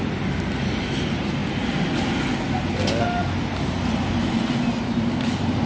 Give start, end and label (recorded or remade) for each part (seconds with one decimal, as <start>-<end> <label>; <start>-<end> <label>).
0.0-5.7 recorded